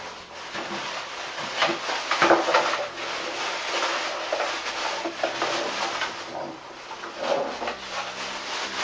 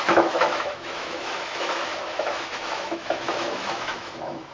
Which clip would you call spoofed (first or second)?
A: second